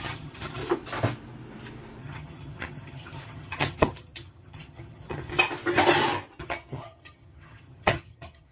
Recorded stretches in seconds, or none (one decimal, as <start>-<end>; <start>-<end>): 0.6-2.0; 5.3-6.4

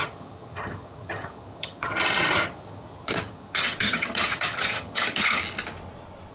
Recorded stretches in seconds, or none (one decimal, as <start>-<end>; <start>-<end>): 5.4-6.3

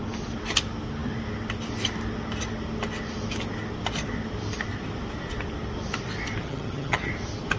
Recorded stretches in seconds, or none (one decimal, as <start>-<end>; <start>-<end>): 0.0-6.4; 7.1-7.6

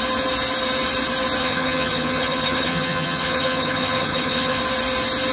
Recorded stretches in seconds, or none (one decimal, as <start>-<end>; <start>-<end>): 0.0-1.4; 4.6-5.3

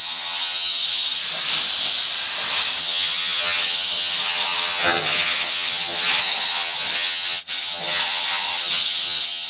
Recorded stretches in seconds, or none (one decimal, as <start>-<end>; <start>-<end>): 1.2-2.8